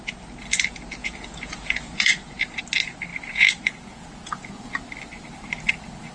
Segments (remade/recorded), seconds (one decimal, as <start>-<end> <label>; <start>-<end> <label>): 0.0-1.0 recorded; 1.0-2.6 remade; 2.6-3.1 recorded; 3.1-4.8 remade; 4.8-6.1 recorded